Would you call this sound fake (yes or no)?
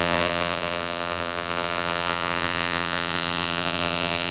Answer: yes